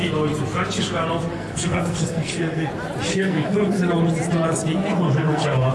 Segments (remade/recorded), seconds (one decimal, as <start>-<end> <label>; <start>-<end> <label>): 0.0-1.3 recorded; 1.3-2.7 remade; 2.7-3.1 recorded; 3.1-3.9 remade; 3.9-4.8 recorded; 4.8-5.7 remade